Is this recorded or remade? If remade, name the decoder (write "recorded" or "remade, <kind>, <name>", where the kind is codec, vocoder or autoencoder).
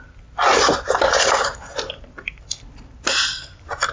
recorded